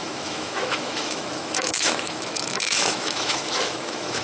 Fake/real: fake